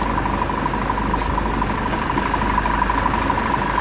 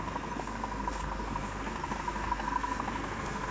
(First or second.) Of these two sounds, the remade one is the second